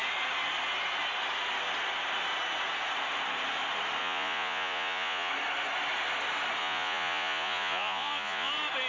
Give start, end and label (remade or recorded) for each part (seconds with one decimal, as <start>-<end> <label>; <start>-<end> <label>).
0.0-4.0 recorded; 4.0-5.3 remade; 5.3-6.6 recorded; 6.6-8.5 remade; 8.5-8.9 recorded